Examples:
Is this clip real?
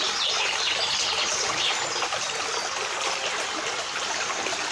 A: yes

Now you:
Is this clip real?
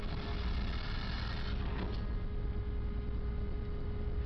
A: yes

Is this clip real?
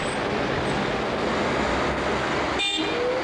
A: yes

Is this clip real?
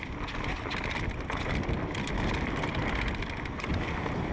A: yes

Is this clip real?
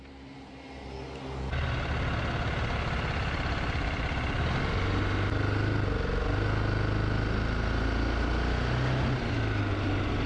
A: yes